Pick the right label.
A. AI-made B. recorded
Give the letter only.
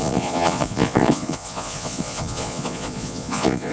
A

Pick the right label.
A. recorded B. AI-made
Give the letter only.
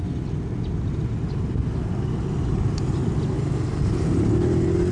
A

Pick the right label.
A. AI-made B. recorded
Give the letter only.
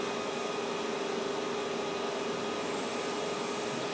B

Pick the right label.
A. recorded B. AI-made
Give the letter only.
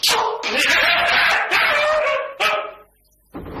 A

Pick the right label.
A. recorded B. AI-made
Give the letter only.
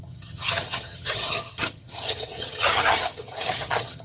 B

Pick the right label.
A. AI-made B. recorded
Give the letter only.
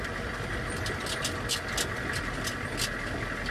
B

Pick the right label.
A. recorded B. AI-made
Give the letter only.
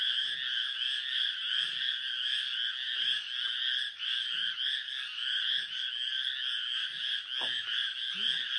A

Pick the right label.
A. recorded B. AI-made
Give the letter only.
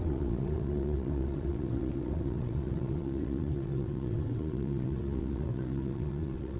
B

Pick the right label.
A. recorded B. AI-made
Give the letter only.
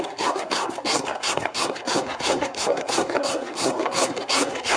B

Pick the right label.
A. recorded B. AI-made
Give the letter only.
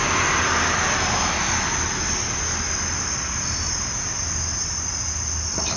A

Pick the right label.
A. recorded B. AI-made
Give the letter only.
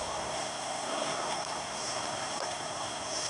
B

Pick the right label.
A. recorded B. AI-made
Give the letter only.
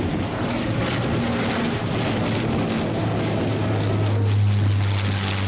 A